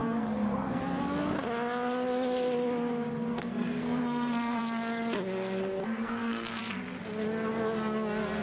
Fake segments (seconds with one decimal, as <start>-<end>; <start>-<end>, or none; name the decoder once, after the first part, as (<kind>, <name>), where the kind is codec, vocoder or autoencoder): 0.0-0.8 (codec, SNAC); 3.3-4.6; 5.8-6.6